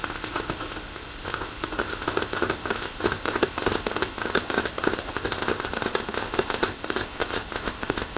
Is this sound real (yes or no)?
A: no